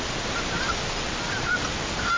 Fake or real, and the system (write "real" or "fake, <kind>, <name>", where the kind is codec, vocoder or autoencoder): real